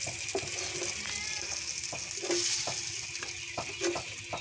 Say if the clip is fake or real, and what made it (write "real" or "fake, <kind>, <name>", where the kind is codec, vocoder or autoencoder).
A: real